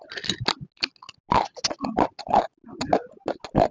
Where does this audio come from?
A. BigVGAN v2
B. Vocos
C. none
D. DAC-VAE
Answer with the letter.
C